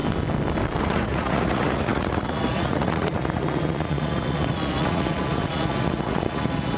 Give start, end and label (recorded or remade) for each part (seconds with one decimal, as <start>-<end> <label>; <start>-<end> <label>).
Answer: 0.0-0.8 recorded; 0.8-6.8 remade